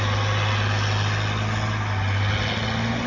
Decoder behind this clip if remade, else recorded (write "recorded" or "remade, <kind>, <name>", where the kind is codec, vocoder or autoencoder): recorded